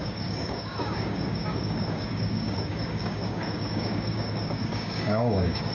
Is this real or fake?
fake